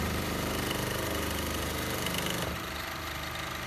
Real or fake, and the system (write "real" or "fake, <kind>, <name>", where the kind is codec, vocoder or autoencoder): fake, vocoder, BigVGAN v2